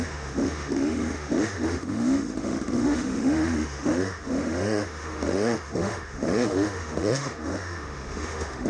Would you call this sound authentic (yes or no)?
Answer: no